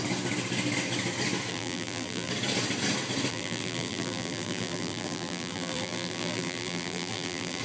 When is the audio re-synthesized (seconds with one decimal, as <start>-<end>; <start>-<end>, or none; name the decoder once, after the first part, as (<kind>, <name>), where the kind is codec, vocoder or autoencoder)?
1.5-2.3 (vocoder, BigVGAN v2); 3.3-7.6